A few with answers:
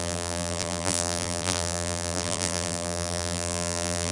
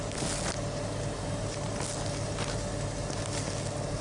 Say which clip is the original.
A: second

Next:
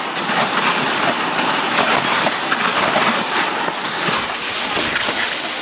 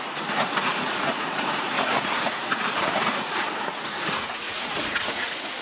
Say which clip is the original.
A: first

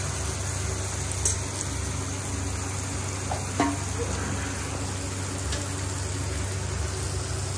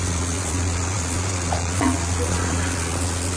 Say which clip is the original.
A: first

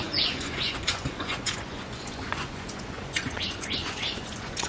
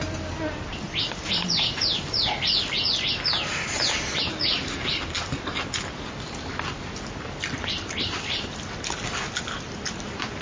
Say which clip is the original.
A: second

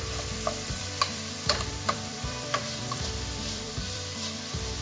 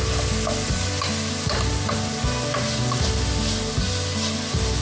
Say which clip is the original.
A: second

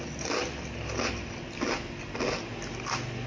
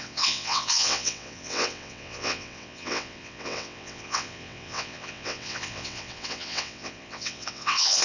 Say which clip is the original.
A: first